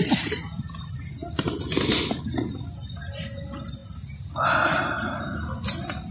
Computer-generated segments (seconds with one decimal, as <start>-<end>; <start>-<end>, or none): none